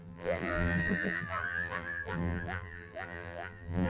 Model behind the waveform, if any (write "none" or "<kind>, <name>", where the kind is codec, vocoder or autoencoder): vocoder, BigVGAN v2